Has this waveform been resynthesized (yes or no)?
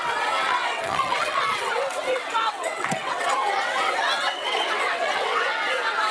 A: yes